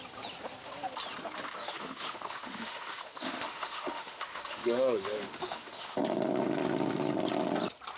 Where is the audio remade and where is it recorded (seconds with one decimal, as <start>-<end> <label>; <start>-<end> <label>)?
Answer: 0.0-1.6 recorded; 1.6-6.0 remade; 6.0-8.0 recorded